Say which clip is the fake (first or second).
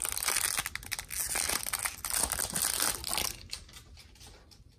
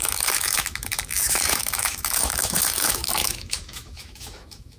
second